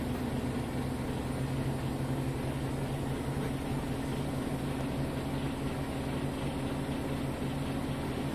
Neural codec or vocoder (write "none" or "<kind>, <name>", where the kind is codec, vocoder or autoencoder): none